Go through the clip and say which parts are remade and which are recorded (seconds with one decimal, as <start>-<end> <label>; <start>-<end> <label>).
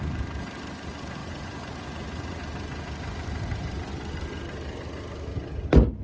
0.0-1.2 recorded; 1.2-2.4 remade; 2.4-6.0 recorded